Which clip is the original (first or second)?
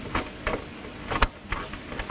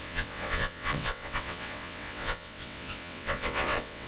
first